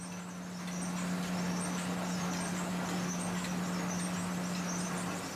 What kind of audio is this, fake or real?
real